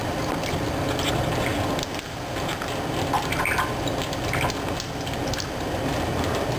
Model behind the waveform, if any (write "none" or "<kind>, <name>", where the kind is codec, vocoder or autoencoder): none